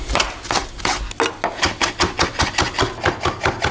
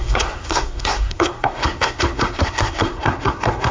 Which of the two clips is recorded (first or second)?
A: first